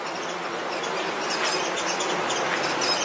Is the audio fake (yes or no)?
no